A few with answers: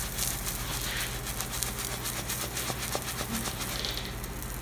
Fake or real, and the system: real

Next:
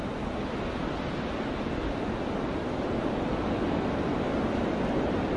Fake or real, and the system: real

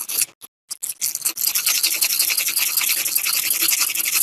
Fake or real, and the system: real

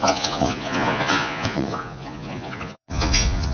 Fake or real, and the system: fake, vocoder, Vocos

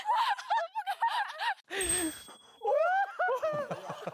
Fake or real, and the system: real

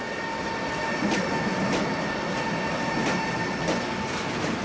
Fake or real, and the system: real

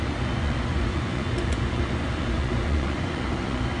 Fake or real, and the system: fake, vocoder, Vocos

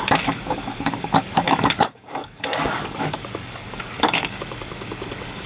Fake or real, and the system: fake, codec, DAC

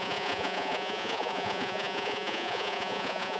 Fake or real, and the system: fake, vocoder, Vocos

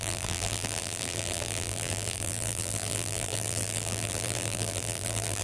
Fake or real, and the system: fake, vocoder, BigVGAN v2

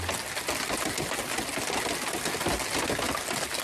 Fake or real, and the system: real